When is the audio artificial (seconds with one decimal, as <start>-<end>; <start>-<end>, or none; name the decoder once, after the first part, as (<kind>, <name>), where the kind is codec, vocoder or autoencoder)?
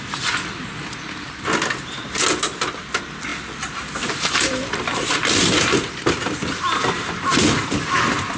none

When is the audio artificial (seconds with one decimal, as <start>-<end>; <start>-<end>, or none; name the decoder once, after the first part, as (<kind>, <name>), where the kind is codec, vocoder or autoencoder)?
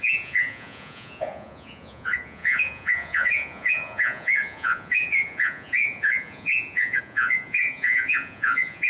0.0-8.9 (vocoder, Vocos)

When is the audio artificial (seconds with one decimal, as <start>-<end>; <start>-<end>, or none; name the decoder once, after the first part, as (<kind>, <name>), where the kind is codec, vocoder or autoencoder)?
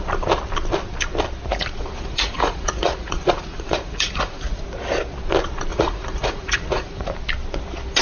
1.5-4.6 (vocoder, Vocos); 5.7-7.1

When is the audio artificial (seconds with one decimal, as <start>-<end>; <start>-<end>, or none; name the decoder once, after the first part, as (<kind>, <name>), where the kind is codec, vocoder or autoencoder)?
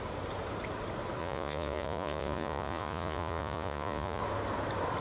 1.2-4.2 (vocoder, Vocos)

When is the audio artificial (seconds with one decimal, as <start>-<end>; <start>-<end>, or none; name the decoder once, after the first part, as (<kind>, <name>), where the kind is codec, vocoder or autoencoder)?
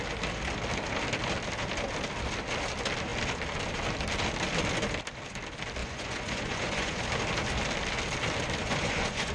5.8-7.0 (vocoder, Vocos); 8.6-9.3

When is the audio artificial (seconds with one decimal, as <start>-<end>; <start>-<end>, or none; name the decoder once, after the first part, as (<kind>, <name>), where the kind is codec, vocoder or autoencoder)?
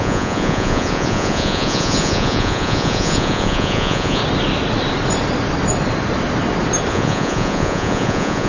0.0-4.2 (vocoder, Vocos); 6.9-8.5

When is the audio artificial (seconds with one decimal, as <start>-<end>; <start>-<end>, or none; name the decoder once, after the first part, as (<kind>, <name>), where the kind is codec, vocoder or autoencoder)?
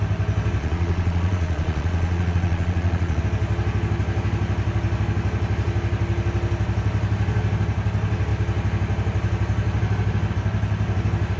0.6-3.2 (vocoder, Vocos)